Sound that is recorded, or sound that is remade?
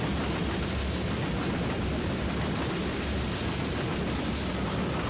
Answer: recorded